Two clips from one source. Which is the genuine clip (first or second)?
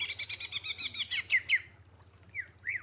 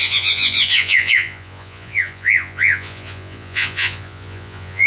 first